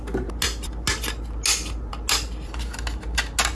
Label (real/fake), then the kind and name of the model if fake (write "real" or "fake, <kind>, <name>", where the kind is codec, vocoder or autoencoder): real